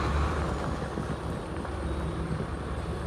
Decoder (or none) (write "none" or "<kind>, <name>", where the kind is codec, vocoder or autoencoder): none